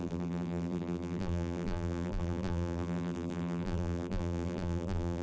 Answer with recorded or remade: remade